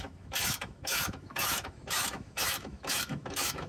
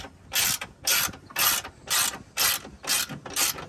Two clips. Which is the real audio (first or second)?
second